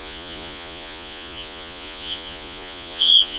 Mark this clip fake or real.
fake